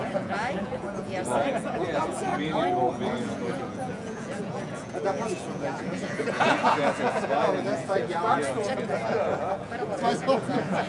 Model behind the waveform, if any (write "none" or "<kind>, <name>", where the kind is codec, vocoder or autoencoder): vocoder, Vocos